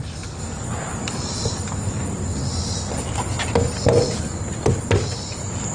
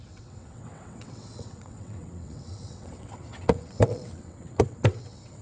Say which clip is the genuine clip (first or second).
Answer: first